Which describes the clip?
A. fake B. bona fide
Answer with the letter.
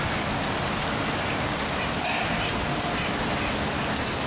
B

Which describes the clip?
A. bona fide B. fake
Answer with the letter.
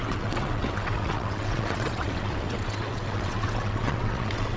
B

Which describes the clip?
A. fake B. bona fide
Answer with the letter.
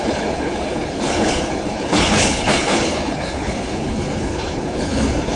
A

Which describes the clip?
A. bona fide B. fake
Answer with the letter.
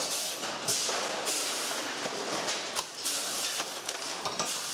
A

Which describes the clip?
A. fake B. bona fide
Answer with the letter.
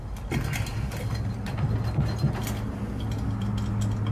B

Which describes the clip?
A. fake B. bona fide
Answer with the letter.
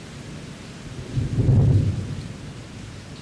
B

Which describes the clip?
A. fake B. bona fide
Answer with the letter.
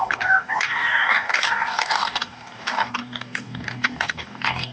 A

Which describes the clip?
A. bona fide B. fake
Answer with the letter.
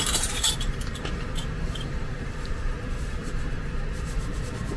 B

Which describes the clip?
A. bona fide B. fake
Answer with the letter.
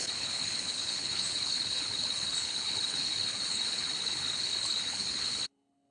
B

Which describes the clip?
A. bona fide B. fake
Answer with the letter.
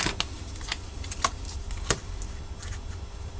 A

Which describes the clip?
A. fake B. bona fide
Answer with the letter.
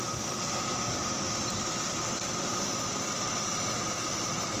B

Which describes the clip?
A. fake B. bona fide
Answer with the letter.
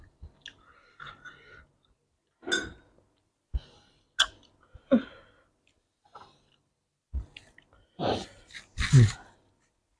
B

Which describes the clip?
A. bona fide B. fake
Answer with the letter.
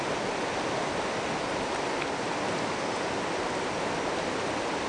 A